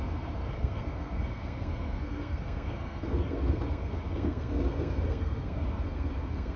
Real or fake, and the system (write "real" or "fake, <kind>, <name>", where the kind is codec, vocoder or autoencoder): fake, codec, SNAC